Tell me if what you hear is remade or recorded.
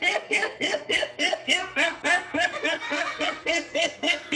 remade